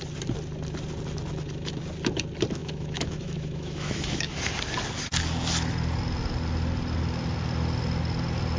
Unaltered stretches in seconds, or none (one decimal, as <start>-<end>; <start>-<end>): 0.0-2.6; 4.4-8.6